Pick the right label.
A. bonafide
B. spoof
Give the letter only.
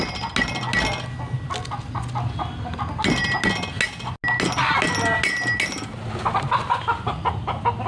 A